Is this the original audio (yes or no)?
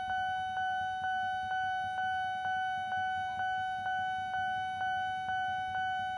yes